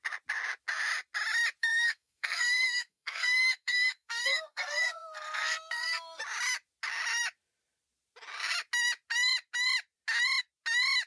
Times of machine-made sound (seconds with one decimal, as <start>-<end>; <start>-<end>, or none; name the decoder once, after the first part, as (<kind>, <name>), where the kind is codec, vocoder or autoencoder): 1.6-6.2 (codec, SNAC)